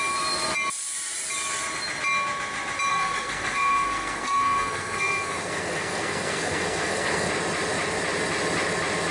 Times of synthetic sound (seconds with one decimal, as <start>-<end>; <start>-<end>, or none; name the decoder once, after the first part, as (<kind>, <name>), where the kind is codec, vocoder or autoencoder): 2.9-7.3 (codec, SNAC)